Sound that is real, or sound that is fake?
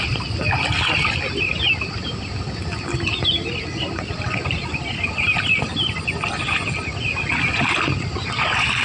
real